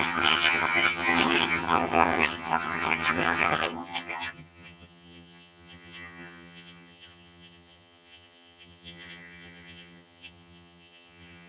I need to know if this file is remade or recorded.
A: remade